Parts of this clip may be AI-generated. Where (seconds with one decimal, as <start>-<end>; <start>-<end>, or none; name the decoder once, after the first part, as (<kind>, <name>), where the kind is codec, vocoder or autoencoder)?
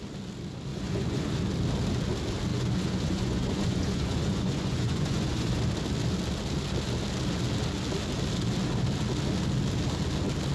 0.7-1.4 (vocoder, Vocos); 2.5-5.5